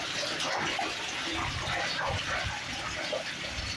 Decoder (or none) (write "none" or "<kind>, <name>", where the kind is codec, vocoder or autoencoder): vocoder, BigVGAN v2